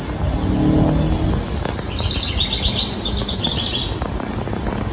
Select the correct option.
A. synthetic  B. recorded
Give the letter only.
B